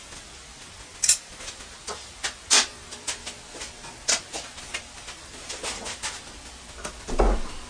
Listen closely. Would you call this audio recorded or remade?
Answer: recorded